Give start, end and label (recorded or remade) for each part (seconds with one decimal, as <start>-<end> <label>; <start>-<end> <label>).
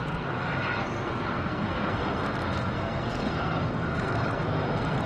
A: 0.0-5.1 remade